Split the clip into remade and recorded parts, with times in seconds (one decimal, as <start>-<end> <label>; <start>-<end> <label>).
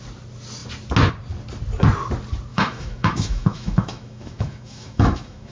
0.0-2.5 recorded; 2.5-5.5 remade